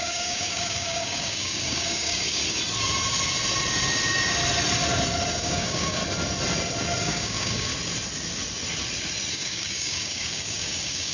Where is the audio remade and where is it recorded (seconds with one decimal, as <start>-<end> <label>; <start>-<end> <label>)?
0.0-2.4 remade; 2.4-5.4 recorded; 5.4-6.0 remade; 6.0-7.0 recorded; 7.0-7.7 remade; 7.7-9.3 recorded; 9.3-11.1 remade